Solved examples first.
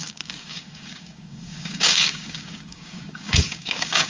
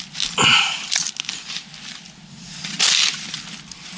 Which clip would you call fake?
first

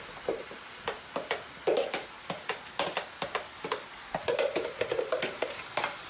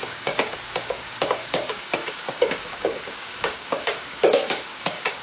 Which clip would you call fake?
second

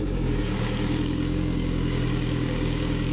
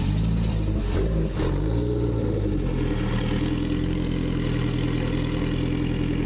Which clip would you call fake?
first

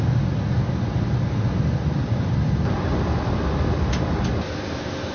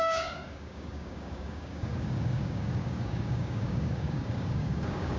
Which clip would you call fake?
second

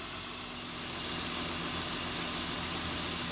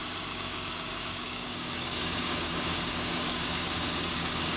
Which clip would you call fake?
second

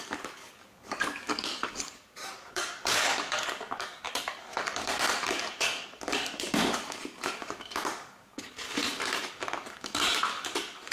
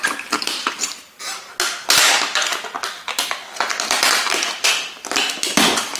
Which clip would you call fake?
first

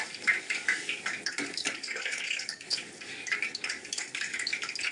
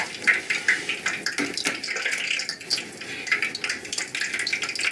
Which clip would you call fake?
first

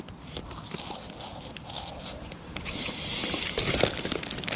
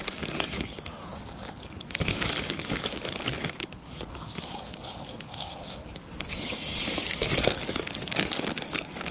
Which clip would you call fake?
second